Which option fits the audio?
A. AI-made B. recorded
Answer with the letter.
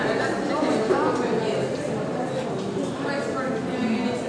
B